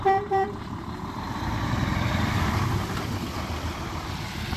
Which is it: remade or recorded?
remade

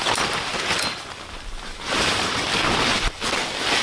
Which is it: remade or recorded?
recorded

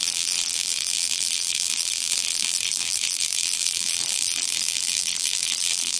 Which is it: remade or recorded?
remade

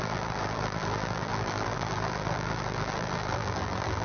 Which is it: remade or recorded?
remade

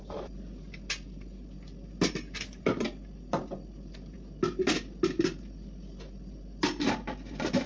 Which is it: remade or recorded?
recorded